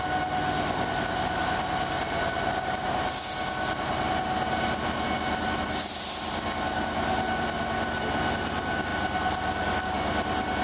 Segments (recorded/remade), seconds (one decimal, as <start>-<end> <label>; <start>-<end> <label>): 0.0-10.6 recorded